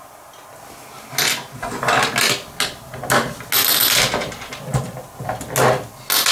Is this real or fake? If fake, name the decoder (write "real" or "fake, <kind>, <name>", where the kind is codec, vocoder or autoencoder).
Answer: real